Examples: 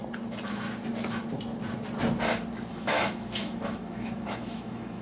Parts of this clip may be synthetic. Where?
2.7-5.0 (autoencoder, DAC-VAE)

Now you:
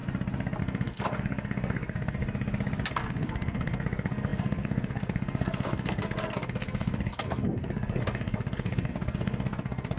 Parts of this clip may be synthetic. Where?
0.6-2.2 (codec, SNAC); 2.9-10.0

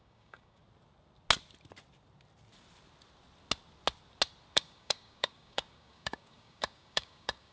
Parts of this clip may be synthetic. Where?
0.0-0.6 (codec, DAC); 4.5-7.5

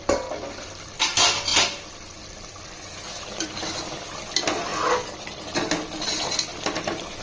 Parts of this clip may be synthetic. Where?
none